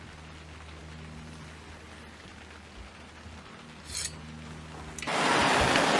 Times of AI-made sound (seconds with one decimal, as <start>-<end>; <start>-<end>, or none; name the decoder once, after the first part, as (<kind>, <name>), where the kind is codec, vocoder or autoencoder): none